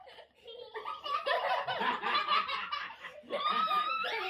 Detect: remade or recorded remade